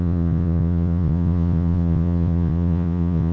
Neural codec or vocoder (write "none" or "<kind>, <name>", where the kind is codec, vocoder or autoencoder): vocoder, Vocos